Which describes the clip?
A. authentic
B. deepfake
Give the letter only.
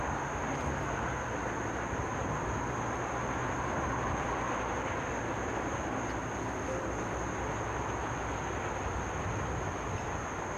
A